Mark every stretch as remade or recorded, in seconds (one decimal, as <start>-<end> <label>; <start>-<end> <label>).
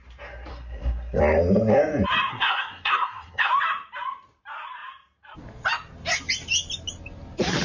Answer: 0.0-0.5 recorded; 0.5-1.2 remade; 1.2-2.3 recorded; 2.3-3.5 remade; 3.5-7.6 recorded